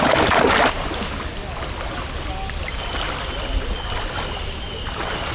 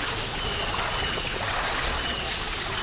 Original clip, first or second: first